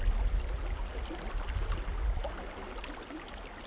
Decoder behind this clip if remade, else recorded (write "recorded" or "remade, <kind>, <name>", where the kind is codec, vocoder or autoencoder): recorded